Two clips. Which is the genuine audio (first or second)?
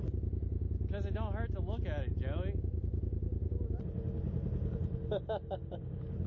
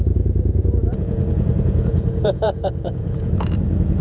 first